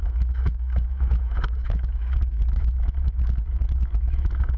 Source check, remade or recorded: remade